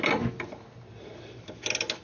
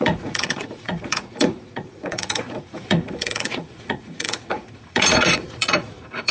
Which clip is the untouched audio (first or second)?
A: first